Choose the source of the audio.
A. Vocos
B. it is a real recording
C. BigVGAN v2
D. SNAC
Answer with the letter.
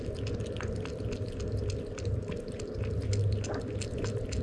B